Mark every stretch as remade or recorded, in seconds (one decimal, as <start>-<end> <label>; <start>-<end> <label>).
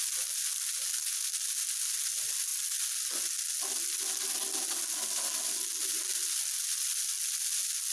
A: 0.0-7.9 recorded